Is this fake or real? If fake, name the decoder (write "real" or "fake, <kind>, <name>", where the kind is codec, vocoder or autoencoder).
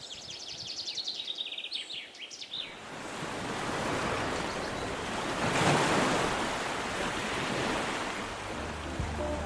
real